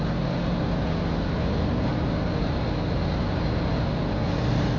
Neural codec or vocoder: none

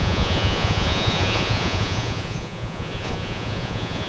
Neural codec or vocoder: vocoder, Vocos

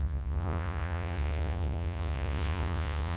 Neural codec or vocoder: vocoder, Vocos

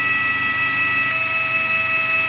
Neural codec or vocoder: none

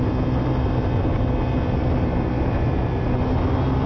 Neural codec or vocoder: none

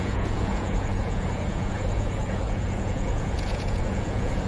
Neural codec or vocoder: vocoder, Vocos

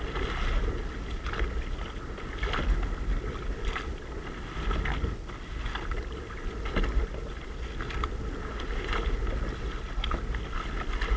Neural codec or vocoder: none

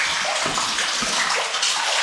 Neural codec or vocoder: none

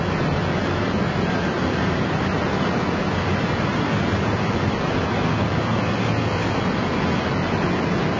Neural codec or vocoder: none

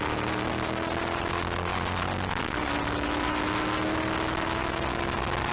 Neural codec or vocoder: none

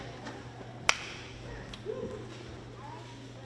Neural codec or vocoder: none